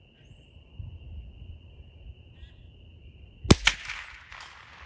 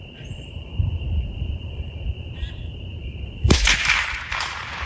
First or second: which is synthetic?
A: second